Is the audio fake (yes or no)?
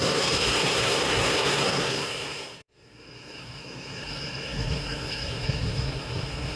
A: yes